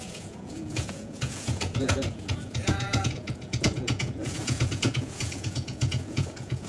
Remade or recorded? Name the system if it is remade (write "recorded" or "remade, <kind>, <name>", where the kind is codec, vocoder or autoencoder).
remade, vocoder, Vocos